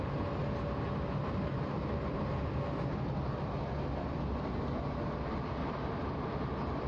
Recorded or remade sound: recorded